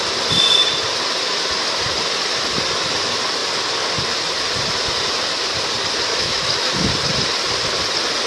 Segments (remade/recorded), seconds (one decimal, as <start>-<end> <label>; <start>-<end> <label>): 0.0-6.1 recorded; 6.1-6.9 remade; 6.9-8.3 recorded

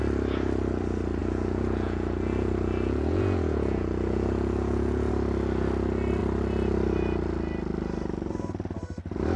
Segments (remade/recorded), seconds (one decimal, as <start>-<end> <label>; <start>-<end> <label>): 0.0-1.2 recorded; 1.2-5.1 remade; 5.1-9.4 recorded

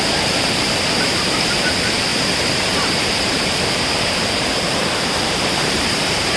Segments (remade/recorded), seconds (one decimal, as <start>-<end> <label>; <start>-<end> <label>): 0.0-2.1 recorded; 2.1-5.9 remade; 5.9-6.4 recorded

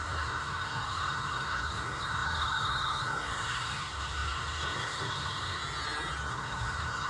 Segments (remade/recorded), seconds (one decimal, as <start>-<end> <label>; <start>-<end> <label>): 0.0-5.6 remade; 5.6-6.3 recorded; 6.3-7.1 remade

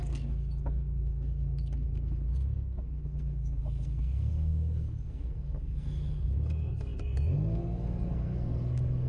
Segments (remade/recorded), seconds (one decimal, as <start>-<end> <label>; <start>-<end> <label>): 0.0-9.1 remade

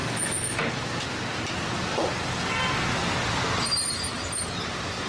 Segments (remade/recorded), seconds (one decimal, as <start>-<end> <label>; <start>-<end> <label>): 0.0-0.7 remade; 0.7-5.1 recorded